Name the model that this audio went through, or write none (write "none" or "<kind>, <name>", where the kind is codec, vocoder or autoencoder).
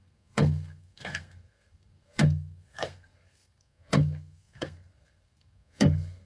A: codec, SNAC